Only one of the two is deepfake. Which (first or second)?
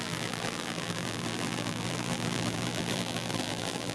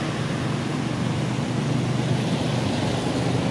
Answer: first